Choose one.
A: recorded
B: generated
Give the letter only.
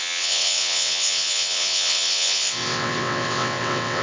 B